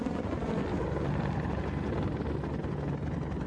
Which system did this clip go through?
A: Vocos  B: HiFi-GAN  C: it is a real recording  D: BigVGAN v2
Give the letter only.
C